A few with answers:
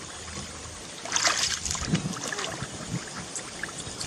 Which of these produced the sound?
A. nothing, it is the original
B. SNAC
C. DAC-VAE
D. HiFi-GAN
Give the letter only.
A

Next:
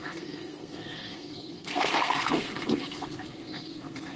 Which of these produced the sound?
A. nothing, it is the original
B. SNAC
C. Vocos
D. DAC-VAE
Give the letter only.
B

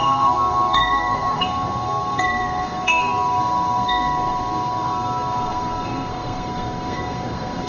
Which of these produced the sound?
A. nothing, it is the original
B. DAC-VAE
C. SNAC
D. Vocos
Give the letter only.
C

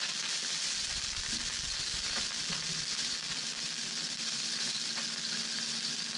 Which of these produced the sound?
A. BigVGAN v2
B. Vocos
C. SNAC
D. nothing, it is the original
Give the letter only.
D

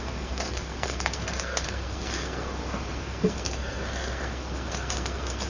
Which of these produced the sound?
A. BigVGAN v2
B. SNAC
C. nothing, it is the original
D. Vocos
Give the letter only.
B